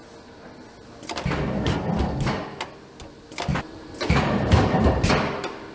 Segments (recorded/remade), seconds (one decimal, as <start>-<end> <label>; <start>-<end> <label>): 0.0-3.5 recorded; 3.5-4.9 remade; 4.9-5.7 recorded